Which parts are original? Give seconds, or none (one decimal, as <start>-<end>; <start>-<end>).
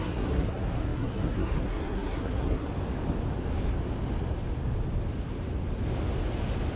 2.7-6.8